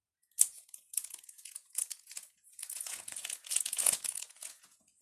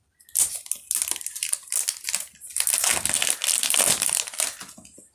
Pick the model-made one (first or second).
first